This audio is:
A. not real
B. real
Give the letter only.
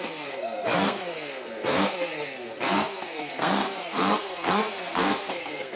A